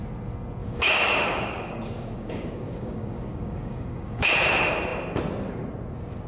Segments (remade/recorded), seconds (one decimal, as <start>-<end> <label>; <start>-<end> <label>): 0.0-0.6 recorded; 0.6-4.3 remade; 4.3-6.3 recorded